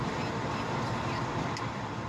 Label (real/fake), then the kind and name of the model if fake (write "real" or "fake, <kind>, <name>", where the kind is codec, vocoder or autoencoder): fake, vocoder, BigVGAN v2